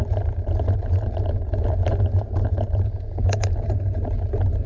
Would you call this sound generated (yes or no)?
no